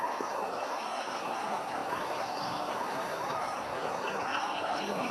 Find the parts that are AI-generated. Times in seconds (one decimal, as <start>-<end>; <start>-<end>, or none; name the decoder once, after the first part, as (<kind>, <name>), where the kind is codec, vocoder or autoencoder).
0.0-5.1 (codec, SNAC)